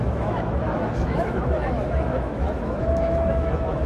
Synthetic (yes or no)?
yes